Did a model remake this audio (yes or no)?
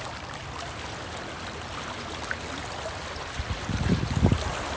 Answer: no